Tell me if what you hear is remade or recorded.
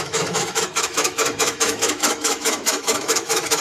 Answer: remade